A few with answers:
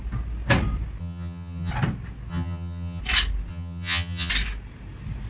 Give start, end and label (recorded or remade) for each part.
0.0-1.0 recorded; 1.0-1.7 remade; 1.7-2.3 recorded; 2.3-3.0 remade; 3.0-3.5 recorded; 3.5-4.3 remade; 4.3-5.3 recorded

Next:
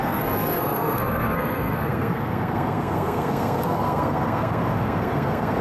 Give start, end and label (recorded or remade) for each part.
0.0-5.6 remade

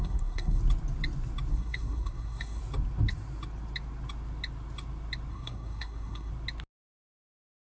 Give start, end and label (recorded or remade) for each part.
0.0-0.6 remade; 0.6-1.5 recorded; 1.5-2.6 remade; 2.6-5.3 recorded; 5.3-6.3 remade; 6.3-7.8 recorded

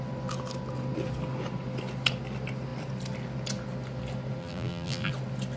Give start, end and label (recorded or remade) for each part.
0.0-4.4 recorded; 4.4-5.1 remade; 5.1-5.6 recorded